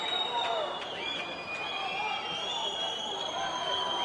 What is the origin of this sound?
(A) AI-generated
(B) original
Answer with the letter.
B